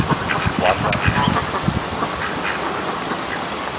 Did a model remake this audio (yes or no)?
no